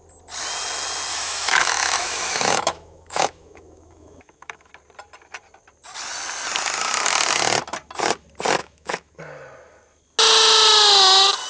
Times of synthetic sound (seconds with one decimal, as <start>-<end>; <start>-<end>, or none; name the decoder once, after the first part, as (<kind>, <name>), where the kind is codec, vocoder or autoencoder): 1.1-4.7 (autoencoder, DAC-VAE); 8.6-9.2

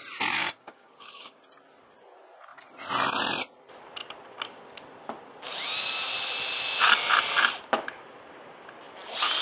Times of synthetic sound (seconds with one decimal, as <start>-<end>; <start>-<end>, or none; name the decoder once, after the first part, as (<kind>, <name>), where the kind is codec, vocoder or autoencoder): 0.4-1.4 (codec, DAC)

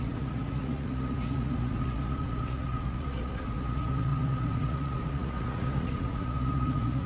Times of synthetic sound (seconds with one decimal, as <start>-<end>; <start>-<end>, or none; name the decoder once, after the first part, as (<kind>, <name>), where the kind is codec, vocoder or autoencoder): 0.0-7.1 (vocoder, Vocos)

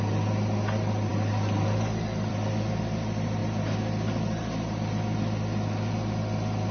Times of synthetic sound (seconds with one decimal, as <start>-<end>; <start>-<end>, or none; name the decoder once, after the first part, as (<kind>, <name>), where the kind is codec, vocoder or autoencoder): none

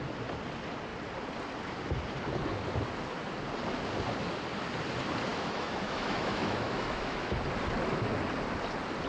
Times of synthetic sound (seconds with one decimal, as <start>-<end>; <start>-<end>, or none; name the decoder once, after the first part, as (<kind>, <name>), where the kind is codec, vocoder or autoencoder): 5.3-7.4 (autoencoder, DAC-VAE)